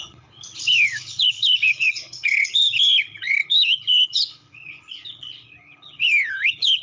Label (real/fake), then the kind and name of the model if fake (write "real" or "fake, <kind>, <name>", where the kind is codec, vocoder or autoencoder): fake, codec, HILCodec